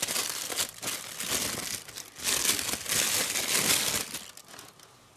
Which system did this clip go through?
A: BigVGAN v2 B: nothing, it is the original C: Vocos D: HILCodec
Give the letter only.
B